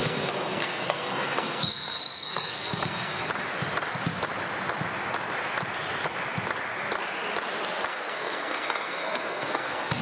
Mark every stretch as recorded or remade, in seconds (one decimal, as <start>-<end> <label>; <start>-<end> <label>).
0.0-3.2 remade; 3.2-7.9 recorded; 7.9-10.0 remade